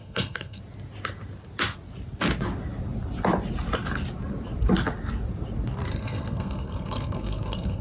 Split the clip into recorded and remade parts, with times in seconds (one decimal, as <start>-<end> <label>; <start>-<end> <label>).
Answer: 0.0-0.6 remade; 0.6-5.9 recorded; 5.9-7.8 remade